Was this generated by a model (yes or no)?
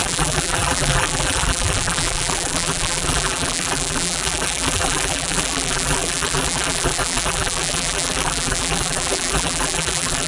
yes